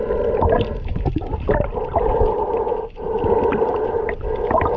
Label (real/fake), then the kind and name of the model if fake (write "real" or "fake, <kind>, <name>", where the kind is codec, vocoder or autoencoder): real